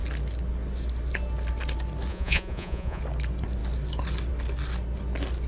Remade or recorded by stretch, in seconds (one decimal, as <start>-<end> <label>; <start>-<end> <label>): 0.0-2.1 recorded; 2.1-3.0 remade; 3.0-5.5 recorded